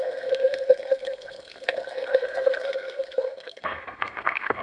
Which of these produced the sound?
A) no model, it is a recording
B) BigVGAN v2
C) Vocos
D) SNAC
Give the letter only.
D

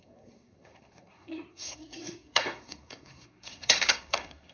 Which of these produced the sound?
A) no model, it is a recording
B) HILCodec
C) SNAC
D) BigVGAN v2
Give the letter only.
C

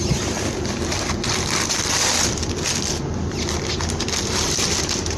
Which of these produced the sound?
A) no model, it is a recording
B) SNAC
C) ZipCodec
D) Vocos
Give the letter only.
A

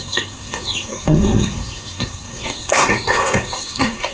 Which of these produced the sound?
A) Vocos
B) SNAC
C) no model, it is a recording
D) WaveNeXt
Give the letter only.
B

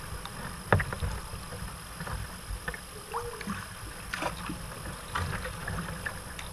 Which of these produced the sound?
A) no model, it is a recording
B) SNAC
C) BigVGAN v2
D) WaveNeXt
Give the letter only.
A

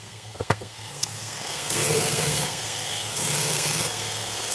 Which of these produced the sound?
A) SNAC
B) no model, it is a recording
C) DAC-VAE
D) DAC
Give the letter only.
A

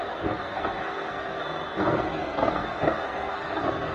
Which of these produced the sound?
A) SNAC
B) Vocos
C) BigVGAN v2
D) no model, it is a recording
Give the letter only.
A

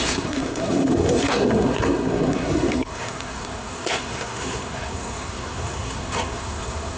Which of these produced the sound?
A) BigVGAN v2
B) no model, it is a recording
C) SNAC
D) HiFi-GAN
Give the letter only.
C